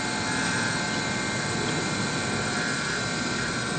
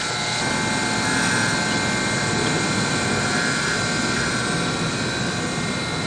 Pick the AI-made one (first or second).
first